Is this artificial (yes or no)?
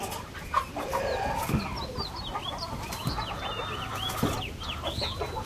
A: no